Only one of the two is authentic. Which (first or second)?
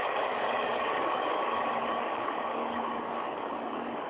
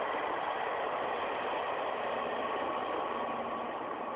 second